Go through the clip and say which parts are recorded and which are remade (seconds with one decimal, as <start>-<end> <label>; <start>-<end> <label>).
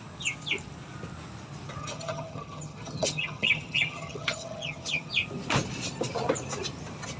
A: 0.0-1.8 recorded; 1.8-5.1 remade; 5.1-7.2 recorded